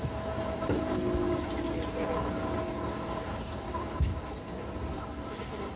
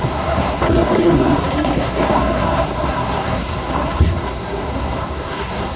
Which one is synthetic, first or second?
second